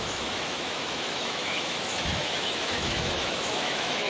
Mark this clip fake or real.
fake